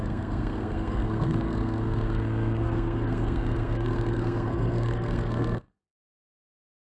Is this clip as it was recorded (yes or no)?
no